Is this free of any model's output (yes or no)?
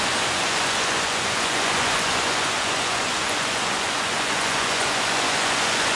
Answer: no